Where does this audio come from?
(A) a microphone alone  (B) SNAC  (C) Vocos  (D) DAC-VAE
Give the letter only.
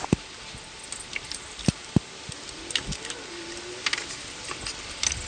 A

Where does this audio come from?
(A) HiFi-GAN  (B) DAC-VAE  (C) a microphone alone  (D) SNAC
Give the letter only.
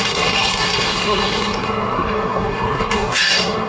D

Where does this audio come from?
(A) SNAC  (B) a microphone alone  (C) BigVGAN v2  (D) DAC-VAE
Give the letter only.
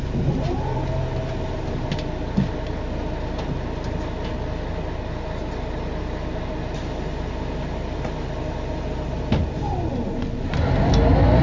B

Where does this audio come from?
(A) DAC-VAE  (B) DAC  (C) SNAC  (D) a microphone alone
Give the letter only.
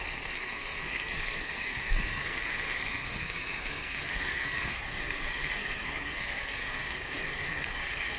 C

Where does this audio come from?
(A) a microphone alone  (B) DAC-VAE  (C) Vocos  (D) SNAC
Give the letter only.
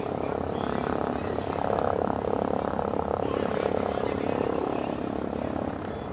A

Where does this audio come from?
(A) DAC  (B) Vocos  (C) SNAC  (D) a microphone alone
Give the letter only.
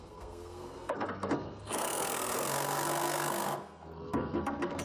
C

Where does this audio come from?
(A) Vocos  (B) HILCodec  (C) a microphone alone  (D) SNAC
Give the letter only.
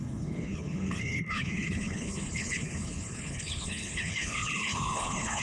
B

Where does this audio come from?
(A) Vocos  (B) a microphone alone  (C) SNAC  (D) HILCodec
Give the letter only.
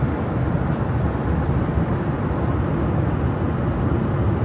B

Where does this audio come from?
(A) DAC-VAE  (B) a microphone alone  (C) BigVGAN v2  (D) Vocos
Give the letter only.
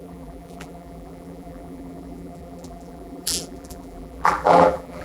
C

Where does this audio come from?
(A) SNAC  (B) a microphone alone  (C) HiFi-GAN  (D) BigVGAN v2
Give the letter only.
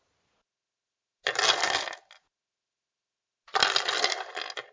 B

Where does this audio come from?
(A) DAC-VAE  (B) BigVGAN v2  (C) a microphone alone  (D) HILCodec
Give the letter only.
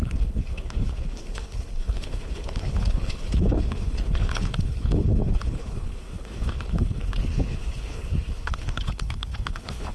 D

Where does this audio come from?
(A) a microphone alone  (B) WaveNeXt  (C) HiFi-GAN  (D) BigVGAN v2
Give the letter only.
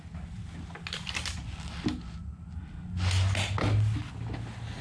A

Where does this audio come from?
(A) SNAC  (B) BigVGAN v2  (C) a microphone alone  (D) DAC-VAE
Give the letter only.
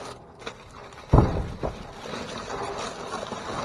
C